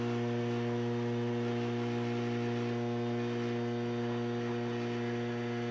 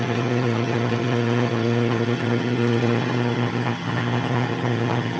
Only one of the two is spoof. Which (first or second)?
second